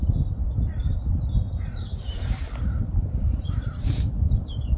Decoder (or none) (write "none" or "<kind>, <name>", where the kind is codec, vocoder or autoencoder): none